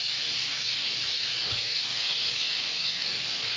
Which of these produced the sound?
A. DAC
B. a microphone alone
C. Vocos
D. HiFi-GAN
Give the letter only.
A